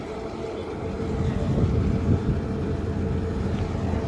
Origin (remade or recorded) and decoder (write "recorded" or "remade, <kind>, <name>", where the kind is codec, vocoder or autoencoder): recorded